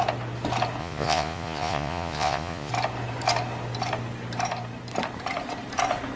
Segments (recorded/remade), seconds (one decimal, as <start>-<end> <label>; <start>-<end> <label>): 0.0-0.8 recorded; 0.8-2.7 remade; 2.7-6.2 recorded